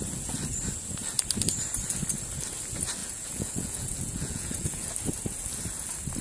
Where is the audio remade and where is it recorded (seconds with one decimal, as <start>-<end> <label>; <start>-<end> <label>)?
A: 0.0-3.0 recorded; 3.0-4.9 remade; 4.9-6.2 recorded